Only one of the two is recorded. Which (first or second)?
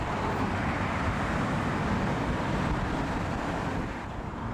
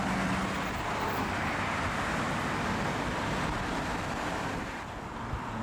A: second